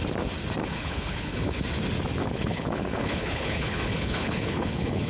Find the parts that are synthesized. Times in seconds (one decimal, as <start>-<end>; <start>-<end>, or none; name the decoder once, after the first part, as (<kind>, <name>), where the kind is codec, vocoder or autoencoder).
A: 0.6-1.6 (codec, HILCodec); 2.2-5.1